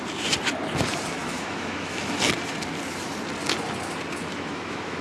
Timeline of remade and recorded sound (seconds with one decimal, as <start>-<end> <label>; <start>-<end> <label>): 0.0-1.2 recorded; 1.2-2.2 remade; 2.2-4.3 recorded; 4.3-5.0 remade